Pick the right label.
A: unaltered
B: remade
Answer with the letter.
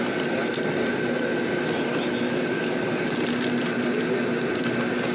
A